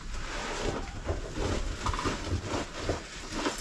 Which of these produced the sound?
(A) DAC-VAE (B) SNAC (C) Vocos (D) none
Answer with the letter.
D